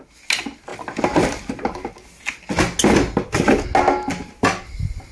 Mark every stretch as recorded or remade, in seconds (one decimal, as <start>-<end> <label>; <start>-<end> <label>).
0.0-5.1 recorded

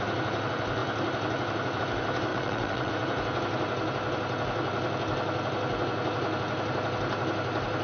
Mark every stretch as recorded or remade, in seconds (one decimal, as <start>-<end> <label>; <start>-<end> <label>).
0.0-2.3 recorded; 2.3-2.9 remade; 2.9-7.8 recorded

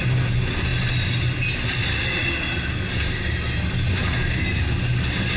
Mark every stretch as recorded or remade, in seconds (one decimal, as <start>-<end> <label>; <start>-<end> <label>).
0.0-5.4 recorded

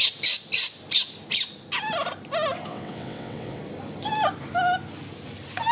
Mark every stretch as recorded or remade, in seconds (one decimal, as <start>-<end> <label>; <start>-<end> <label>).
0.0-2.7 recorded; 2.7-3.6 remade; 3.6-5.7 recorded

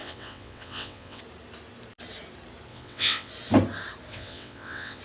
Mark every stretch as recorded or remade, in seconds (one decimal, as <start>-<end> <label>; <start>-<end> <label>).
0.0-1.2 remade; 1.2-2.7 recorded; 2.7-3.3 remade; 3.3-4.1 recorded; 4.1-5.0 remade

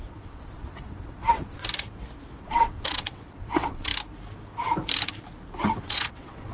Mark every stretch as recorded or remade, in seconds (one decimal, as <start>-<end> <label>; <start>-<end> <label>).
0.0-1.6 remade; 1.6-2.4 recorded; 2.4-3.9 remade; 3.9-5.7 recorded; 5.7-6.5 remade

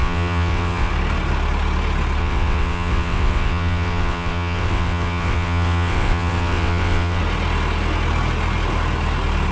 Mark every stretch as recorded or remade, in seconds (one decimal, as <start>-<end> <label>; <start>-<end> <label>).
0.0-0.9 remade; 0.9-2.2 recorded; 2.2-7.2 remade; 7.2-9.5 recorded

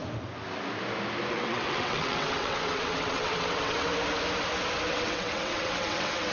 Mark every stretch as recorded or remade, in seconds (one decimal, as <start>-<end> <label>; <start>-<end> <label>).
0.0-1.3 recorded; 1.3-3.9 remade; 3.9-4.9 recorded; 4.9-6.3 remade